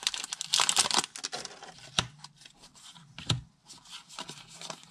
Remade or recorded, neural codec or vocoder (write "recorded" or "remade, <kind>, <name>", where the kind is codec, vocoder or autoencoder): recorded